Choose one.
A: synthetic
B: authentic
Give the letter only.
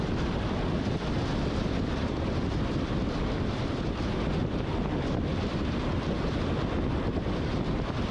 B